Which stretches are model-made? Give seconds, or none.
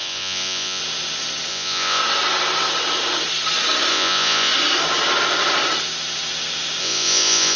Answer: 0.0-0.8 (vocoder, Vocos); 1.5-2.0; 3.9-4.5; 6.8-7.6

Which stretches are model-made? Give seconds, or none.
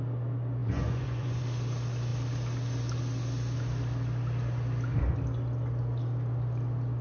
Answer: 0.6-1.4 (vocoder, Vocos)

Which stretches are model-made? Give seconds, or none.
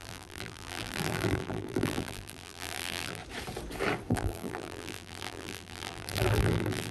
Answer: 0.0-3.2 (vocoder, BigVGAN v2); 4.1-6.9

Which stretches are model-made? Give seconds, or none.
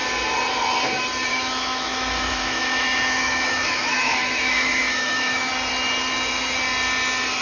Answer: 1.3-5.5 (autoencoder, DAC-VAE)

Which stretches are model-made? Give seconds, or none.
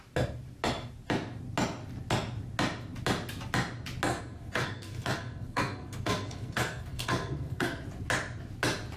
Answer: 4.1-7.8 (codec, SNAC)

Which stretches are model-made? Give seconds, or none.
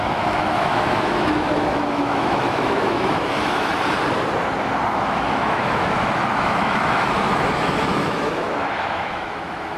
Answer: 0.0-3.7 (autoencoder, DAC-VAE); 4.9-9.8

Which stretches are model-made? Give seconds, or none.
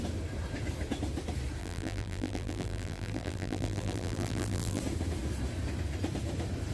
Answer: 1.6-4.8 (vocoder, BigVGAN v2)